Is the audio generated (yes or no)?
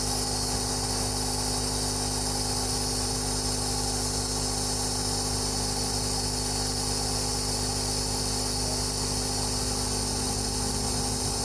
no